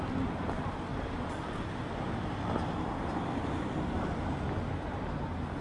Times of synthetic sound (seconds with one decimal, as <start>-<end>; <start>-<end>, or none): none

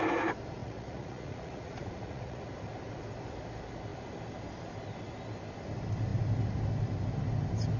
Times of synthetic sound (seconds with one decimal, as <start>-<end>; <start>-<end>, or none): 0.6-2.4

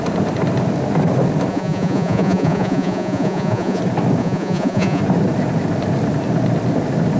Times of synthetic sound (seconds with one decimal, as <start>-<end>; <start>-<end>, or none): 1.5-3.8; 4.2-5.0